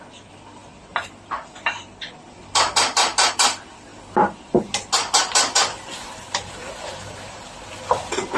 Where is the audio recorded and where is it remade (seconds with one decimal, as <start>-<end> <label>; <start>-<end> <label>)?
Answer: 0.0-8.4 remade